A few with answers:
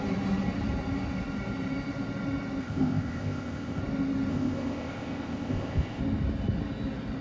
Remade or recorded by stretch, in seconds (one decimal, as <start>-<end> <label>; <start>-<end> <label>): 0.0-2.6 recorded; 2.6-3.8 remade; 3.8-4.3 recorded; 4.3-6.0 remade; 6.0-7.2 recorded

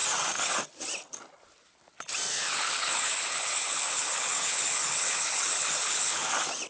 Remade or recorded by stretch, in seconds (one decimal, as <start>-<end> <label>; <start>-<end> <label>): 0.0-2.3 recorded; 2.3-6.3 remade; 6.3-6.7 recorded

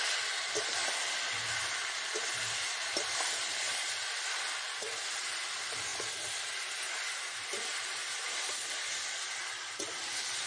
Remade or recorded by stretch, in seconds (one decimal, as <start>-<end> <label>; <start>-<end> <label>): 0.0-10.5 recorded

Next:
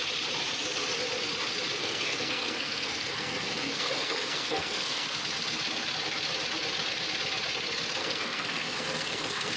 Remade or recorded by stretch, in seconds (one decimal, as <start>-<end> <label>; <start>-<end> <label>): 0.0-1.8 recorded; 1.8-5.2 remade; 5.2-8.0 recorded; 8.0-9.6 remade

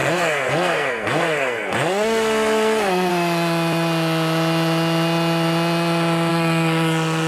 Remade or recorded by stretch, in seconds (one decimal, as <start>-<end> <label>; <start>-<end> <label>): 0.0-3.1 remade; 3.1-6.3 recorded; 6.3-7.3 remade

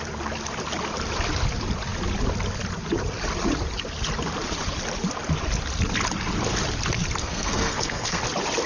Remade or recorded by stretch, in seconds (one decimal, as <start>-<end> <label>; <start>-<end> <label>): 0.0-7.2 recorded; 7.2-8.2 remade; 8.2-8.7 recorded

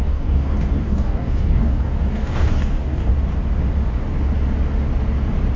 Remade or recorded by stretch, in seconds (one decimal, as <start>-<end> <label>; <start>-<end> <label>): 0.0-3.1 remade; 3.1-5.6 recorded